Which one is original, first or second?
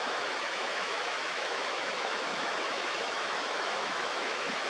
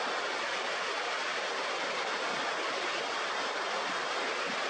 second